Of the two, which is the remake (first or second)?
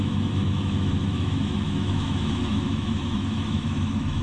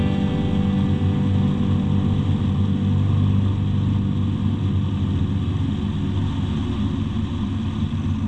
first